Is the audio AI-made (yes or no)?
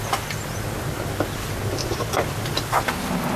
no